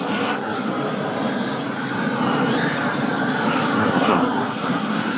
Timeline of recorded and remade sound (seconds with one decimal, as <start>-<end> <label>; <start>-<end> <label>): 0.0-0.7 remade; 0.7-3.8 recorded; 3.8-5.2 remade